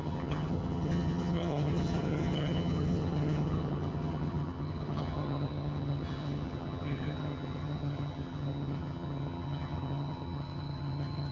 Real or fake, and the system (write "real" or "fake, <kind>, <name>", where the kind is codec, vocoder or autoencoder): fake, vocoder, HiFi-GAN